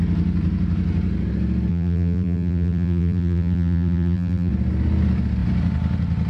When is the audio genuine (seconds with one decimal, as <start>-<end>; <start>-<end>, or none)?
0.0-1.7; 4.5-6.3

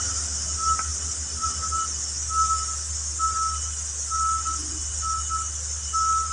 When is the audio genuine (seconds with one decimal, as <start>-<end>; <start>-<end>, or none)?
0.0-6.3

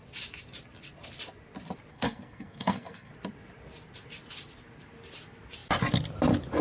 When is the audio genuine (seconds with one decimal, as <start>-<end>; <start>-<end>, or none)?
0.0-1.9; 3.1-6.6

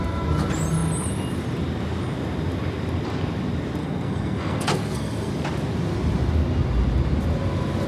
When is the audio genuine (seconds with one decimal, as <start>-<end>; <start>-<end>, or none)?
0.0-3.8; 5.3-7.9

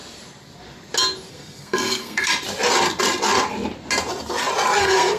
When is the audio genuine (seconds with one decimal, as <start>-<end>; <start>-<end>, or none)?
0.0-1.3; 2.3-4.8

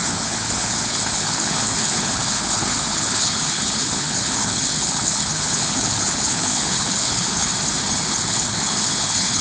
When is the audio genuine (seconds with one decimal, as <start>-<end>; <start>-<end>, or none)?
7.5-8.0